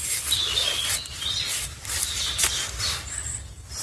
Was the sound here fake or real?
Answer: real